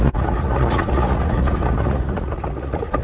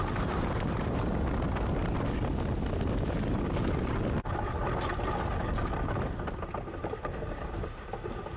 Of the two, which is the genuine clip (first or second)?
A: second